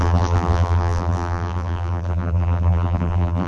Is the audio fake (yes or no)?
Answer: yes